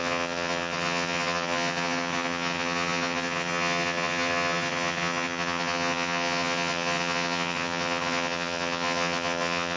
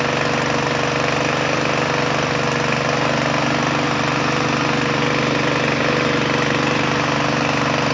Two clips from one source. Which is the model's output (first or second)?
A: first